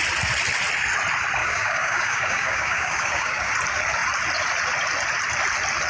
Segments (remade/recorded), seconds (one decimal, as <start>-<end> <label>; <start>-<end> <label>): 0.0-1.4 recorded; 1.4-3.5 remade; 3.5-5.9 recorded